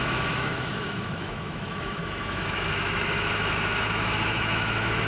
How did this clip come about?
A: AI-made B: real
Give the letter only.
A